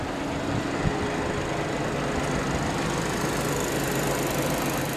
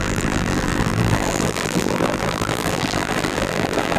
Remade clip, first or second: second